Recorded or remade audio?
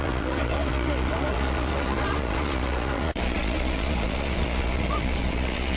remade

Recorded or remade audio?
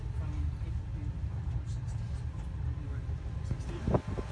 recorded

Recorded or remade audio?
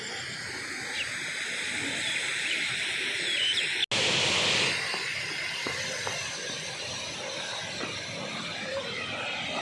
recorded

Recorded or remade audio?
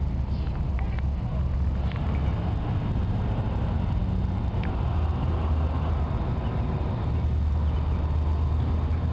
recorded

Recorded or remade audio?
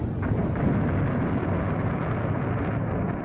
recorded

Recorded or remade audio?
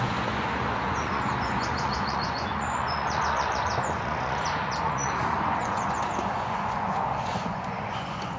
remade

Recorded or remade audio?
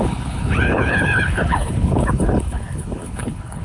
remade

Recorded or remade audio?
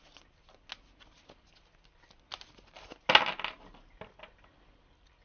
recorded